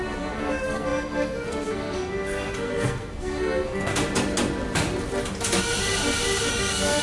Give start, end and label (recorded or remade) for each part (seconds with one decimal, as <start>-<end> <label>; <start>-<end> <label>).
0.0-3.9 remade; 3.9-6.5 recorded; 6.5-7.0 remade